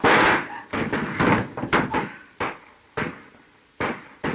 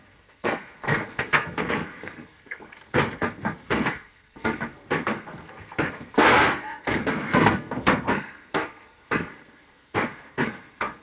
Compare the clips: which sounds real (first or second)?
first